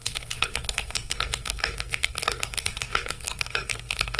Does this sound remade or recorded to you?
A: remade